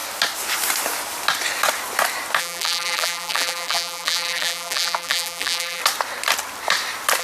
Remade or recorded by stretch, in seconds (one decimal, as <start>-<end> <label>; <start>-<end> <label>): 0.0-2.4 recorded; 2.4-5.8 remade; 5.8-7.2 recorded